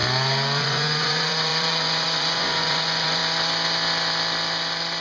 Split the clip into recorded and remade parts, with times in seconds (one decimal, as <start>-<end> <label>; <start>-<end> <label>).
0.0-0.6 recorded; 0.6-3.2 remade; 3.2-5.0 recorded